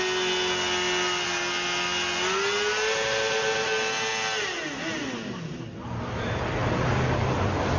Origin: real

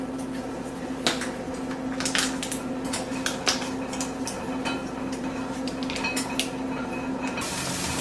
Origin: real